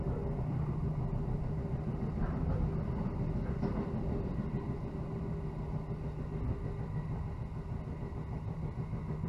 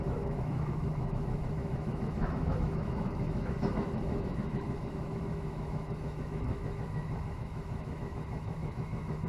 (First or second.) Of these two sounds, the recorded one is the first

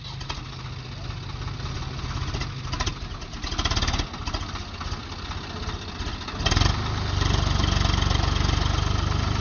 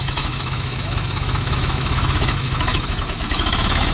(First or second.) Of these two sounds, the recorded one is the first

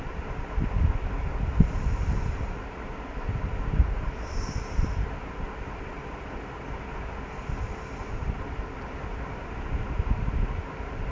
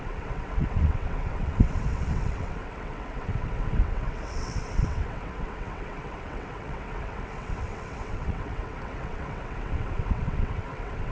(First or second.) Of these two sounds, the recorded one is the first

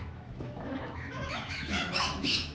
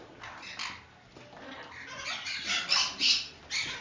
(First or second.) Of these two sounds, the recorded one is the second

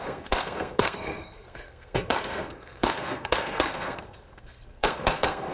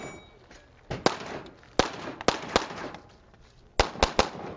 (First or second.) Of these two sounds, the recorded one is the second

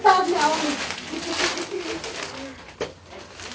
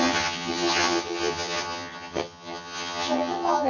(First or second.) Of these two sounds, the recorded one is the first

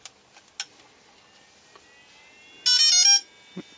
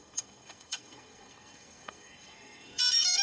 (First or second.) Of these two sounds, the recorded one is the first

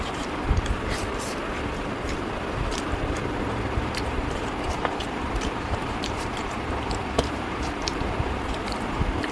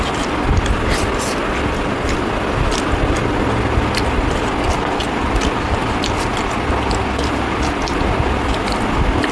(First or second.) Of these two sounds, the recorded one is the second